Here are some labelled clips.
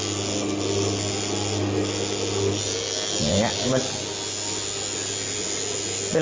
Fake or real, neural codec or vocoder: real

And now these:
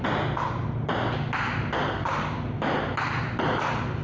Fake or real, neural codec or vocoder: real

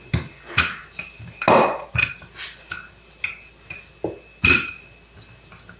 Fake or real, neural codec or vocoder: real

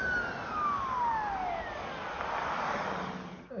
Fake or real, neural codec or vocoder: real